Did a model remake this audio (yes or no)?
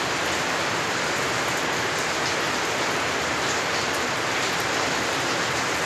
no